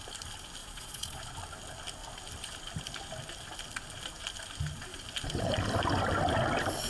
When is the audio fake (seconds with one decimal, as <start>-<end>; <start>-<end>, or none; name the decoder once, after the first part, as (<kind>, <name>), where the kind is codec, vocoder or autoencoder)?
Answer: 0.6-1.2 (vocoder, Vocos)